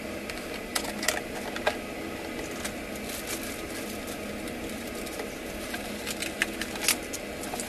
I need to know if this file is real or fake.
real